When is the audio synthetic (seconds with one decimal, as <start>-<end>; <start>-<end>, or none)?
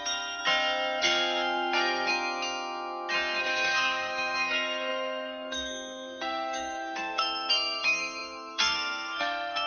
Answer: 0.0-0.4; 1.0-2.1; 3.4-9.7